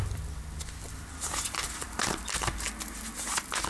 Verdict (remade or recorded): recorded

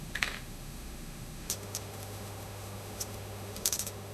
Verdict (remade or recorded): remade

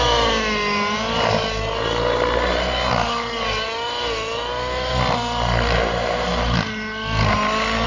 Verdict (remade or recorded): recorded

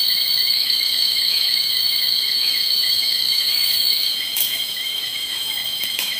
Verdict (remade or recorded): remade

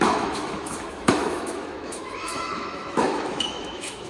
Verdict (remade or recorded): remade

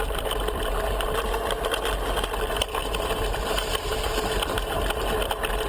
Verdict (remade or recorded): recorded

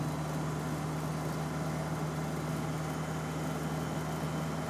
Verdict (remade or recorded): recorded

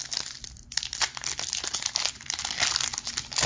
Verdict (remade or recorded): recorded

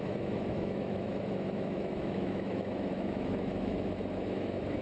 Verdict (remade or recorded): remade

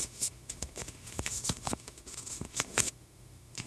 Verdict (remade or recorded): remade